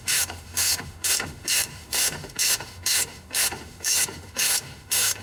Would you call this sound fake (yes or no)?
yes